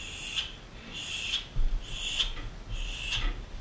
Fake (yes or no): no